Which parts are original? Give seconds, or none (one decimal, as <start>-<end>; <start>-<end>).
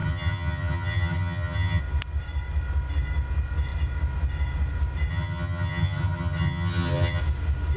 1.8-5.1; 7.2-7.8